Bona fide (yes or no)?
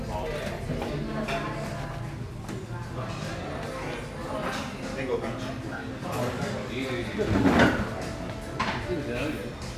yes